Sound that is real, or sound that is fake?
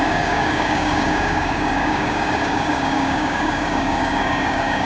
fake